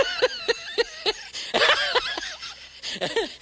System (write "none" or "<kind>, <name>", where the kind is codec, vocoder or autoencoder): none